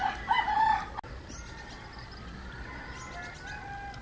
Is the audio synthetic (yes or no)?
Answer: no